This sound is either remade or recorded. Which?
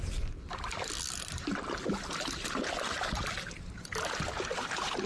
recorded